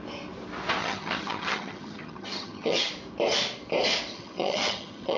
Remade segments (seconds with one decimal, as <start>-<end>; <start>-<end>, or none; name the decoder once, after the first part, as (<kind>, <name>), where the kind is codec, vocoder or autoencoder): 0.8-2.9 (vocoder, HiFi-GAN); 4.1-5.2